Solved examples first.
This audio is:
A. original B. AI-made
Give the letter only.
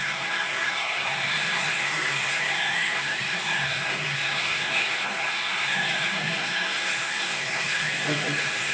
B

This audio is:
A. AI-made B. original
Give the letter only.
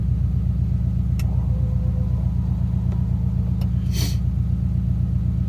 B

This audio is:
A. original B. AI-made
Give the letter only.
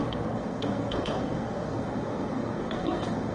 B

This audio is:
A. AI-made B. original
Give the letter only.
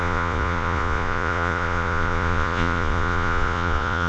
A